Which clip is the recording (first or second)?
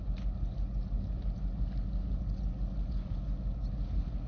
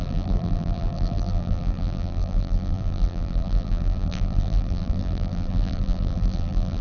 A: first